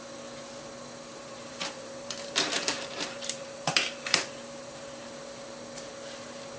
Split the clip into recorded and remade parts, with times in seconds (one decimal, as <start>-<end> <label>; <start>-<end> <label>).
0.0-1.1 recorded; 1.1-5.1 remade; 5.1-6.6 recorded